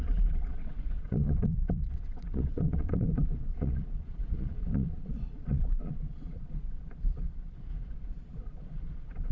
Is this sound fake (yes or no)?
yes